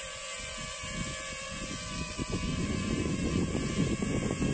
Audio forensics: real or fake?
fake